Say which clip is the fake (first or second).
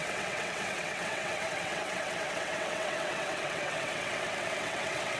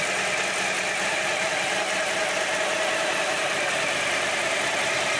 first